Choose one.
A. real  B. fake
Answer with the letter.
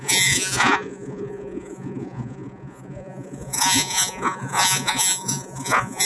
B